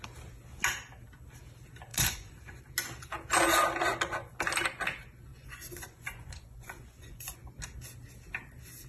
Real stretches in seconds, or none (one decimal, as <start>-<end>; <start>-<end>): 0.0-1.9; 2.6-5.3; 7.5-8.9